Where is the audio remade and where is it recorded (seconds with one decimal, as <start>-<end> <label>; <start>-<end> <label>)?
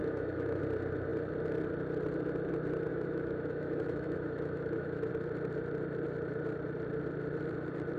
0.0-0.6 remade; 0.6-2.9 recorded; 2.9-5.1 remade; 5.1-8.0 recorded